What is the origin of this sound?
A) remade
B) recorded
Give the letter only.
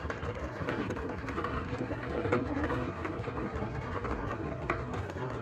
A